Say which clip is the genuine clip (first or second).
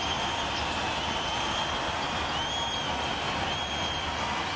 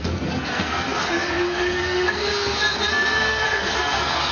first